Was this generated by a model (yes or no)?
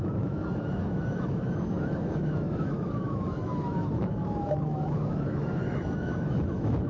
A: yes